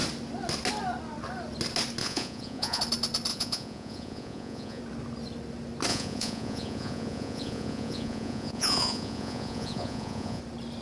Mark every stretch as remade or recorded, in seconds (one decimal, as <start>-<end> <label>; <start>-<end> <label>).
0.0-2.0 recorded; 2.0-2.8 remade; 2.8-3.3 recorded; 3.3-4.8 remade; 4.8-5.9 recorded; 5.9-10.4 remade; 10.4-10.8 recorded